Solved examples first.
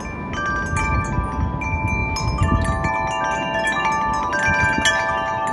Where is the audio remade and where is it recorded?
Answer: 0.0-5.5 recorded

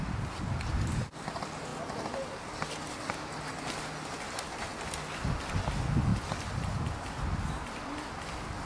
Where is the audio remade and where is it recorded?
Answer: 0.0-8.7 recorded

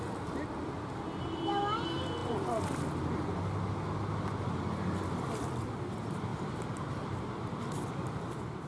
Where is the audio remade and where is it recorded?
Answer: 0.0-8.7 recorded

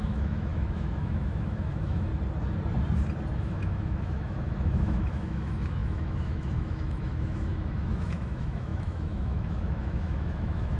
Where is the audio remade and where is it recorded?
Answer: 0.0-2.1 remade; 2.1-3.4 recorded; 3.4-10.8 remade

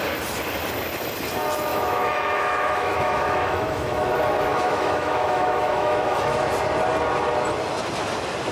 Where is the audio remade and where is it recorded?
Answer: 0.0-1.7 recorded; 1.7-4.1 remade; 4.1-4.5 recorded; 4.5-6.5 remade; 6.5-8.5 recorded

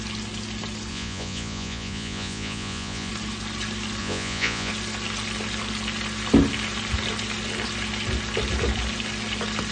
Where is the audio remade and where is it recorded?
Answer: 0.0-0.9 recorded; 0.9-3.1 remade; 3.1-4.0 recorded; 4.0-4.7 remade; 4.7-9.7 recorded